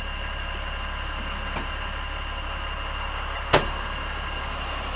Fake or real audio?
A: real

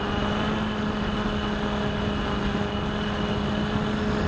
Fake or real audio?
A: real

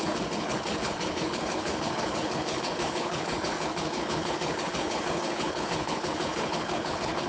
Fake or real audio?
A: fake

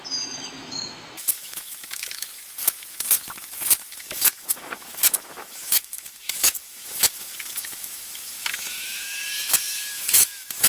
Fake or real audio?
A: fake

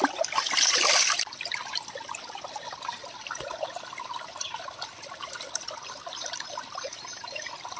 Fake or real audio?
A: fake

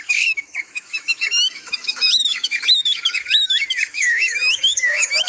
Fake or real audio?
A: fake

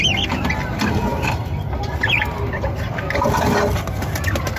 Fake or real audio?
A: real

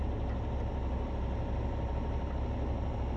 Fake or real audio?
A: real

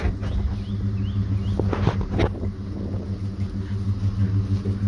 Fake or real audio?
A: real